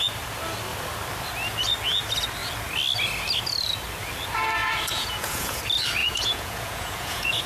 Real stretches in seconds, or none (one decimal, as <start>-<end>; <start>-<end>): 0.0-4.6; 5.6-6.0